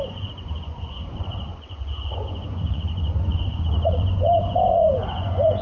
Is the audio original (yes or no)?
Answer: no